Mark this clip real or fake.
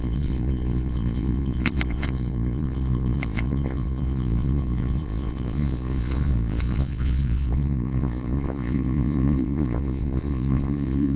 fake